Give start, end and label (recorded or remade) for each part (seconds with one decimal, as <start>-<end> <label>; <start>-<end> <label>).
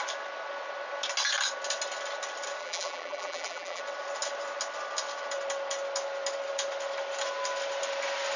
0.0-2.6 recorded; 2.6-3.8 remade; 3.8-8.4 recorded